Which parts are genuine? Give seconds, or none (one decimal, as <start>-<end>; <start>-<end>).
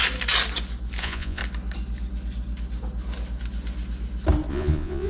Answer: 0.0-1.0; 1.4-4.5